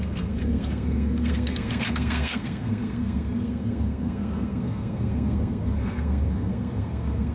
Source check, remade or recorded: remade